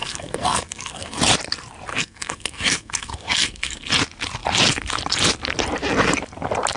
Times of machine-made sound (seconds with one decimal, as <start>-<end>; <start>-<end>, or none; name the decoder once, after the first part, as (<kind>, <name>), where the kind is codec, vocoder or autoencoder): 0.0-1.2 (codec, SNAC); 1.9-3.9